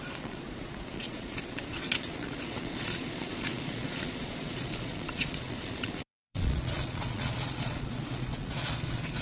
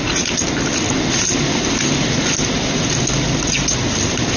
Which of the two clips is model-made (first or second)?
first